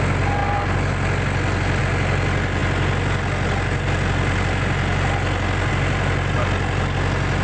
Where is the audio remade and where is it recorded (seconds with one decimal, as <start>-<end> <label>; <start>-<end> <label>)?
0.0-7.4 recorded